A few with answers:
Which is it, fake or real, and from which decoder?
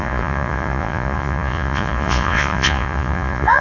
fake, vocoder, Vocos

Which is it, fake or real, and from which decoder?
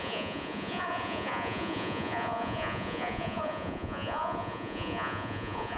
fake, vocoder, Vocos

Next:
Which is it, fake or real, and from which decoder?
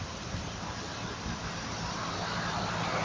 real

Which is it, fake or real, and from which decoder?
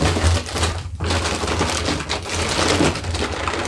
real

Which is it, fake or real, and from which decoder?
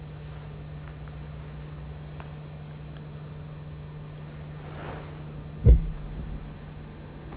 real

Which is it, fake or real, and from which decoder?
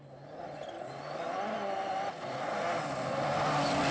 real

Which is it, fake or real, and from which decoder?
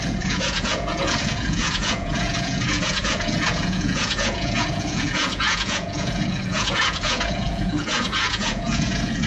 fake, vocoder, Vocos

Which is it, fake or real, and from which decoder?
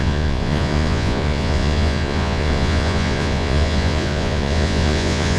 fake, vocoder, Vocos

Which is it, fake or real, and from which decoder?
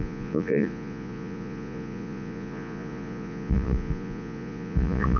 fake, vocoder, Vocos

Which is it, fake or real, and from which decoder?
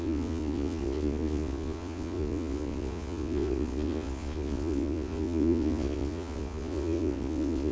fake, vocoder, Vocos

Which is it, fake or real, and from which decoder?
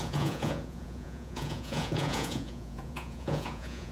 fake, vocoder, Vocos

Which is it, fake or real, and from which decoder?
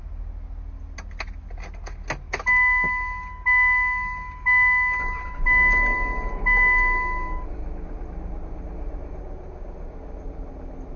real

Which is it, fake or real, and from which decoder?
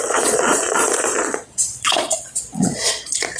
fake, vocoder, Vocos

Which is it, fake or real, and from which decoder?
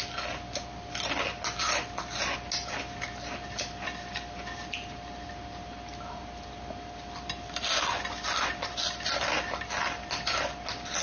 real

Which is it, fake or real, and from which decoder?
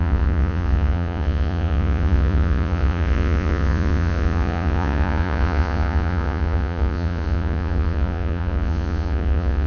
fake, vocoder, Vocos